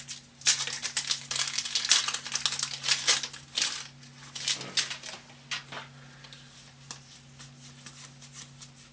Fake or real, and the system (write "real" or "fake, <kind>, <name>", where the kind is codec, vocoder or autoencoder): real